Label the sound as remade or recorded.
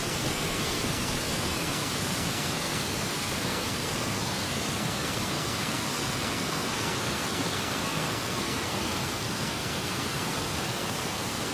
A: remade